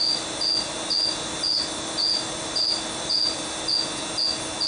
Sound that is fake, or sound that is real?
real